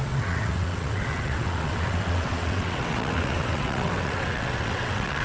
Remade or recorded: remade